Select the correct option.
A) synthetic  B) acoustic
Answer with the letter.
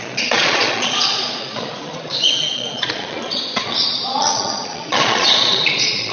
A